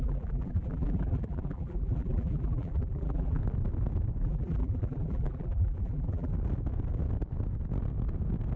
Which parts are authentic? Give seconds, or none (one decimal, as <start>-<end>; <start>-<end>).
3.4-4.2; 6.3-8.6